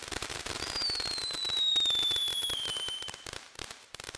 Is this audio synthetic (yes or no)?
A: yes